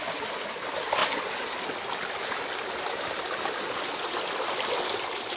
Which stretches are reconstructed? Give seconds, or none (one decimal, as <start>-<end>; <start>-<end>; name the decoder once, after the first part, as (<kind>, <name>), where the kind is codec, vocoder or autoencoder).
none